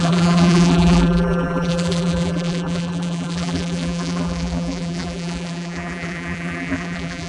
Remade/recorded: remade